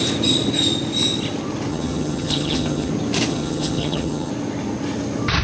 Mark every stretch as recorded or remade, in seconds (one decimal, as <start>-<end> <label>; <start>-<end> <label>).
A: 0.0-1.7 recorded; 1.7-2.9 remade; 2.9-3.3 recorded; 3.3-4.3 remade; 4.3-5.4 recorded